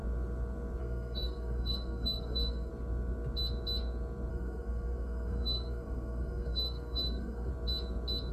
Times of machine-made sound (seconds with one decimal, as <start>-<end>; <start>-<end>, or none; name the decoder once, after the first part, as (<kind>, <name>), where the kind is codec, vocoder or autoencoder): 0.8-2.7 (codec, SNAC); 4.3-7.5